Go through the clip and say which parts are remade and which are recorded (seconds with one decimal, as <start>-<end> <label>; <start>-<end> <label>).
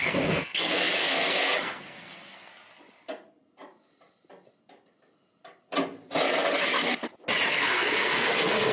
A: 0.0-2.5 remade; 2.5-7.5 recorded; 7.5-8.7 remade